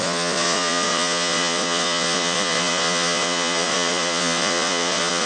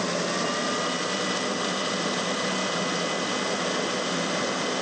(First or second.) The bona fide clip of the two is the second